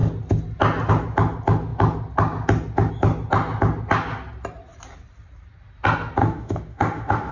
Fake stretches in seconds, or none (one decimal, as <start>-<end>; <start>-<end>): 6.2-7.3